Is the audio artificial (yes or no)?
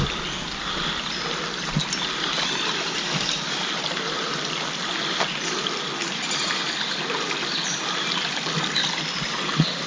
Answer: no